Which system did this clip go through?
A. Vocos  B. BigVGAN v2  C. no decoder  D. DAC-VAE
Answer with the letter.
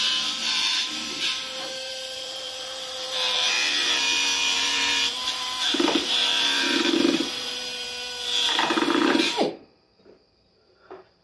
B